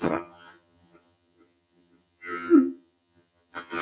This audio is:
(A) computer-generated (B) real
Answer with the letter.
A